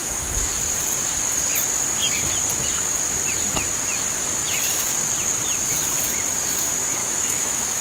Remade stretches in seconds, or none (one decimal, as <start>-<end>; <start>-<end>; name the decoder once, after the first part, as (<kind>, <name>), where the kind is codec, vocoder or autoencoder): 0.0-0.5 (autoencoder, DAC-VAE); 7.0-7.8